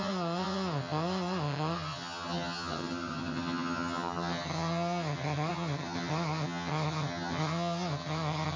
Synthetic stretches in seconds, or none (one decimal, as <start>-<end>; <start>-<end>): 0.0-8.6